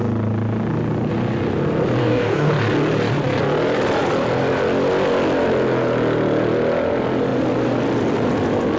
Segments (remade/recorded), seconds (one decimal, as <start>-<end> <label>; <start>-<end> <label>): 0.0-2.0 recorded; 2.0-2.5 remade; 2.5-8.8 recorded